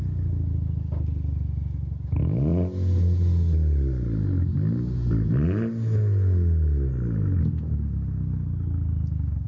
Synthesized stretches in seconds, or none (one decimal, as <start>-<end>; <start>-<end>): none